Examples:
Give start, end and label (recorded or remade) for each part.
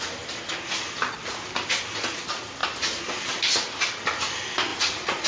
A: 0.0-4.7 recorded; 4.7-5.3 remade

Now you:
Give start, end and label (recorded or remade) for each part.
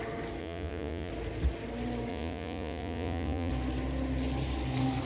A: 0.0-0.4 recorded; 0.4-1.1 remade; 1.1-2.1 recorded; 2.1-3.5 remade; 3.5-5.1 recorded